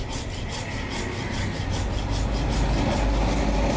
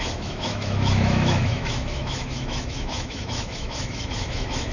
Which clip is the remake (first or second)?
second